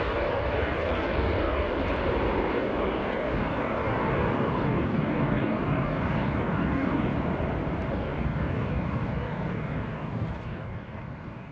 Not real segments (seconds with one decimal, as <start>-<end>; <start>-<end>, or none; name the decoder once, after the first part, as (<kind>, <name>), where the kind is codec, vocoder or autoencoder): 0.0-1.8 (codec, DAC); 2.5-7.1; 7.9-11.5